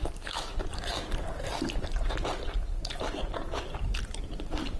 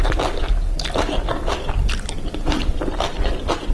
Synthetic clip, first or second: first